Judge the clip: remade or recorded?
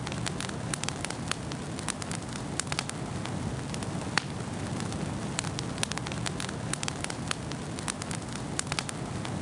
recorded